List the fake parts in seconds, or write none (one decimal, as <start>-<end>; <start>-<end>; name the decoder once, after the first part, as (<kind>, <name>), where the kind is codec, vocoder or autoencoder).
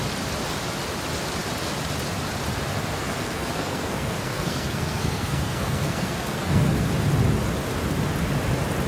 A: 3.0-6.9 (codec, SNAC)